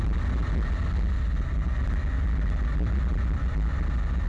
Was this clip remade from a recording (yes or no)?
no